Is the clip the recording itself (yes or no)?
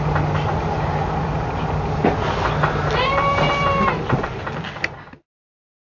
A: yes